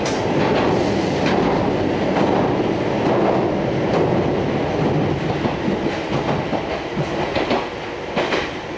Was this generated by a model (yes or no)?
no